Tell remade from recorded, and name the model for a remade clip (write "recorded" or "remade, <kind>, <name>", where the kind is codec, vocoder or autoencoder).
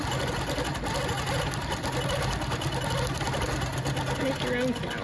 recorded